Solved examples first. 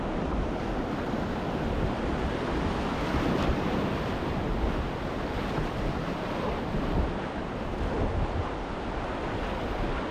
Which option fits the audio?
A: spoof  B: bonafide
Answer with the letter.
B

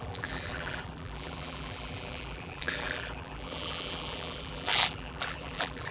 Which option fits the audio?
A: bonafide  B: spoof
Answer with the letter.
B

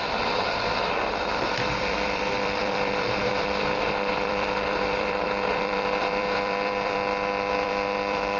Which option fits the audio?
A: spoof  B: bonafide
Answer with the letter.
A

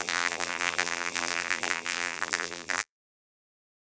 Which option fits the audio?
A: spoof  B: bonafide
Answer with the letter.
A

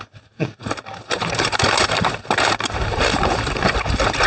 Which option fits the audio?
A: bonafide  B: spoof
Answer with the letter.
B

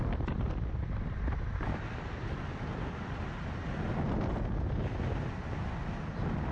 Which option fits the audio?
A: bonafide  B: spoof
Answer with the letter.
A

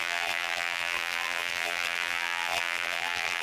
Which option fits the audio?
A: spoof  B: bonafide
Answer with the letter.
A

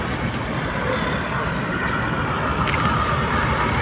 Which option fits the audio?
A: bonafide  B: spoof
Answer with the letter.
A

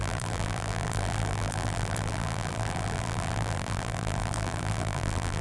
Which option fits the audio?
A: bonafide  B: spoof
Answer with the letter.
B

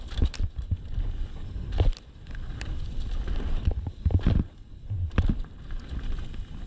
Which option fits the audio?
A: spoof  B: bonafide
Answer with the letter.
B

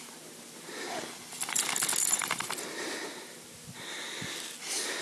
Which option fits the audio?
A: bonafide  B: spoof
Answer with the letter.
A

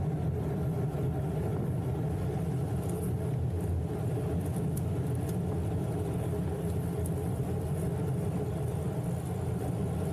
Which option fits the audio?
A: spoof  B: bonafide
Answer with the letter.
B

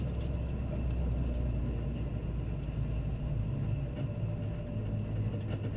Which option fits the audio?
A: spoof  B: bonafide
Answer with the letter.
B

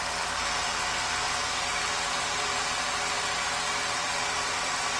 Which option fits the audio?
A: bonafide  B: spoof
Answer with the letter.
B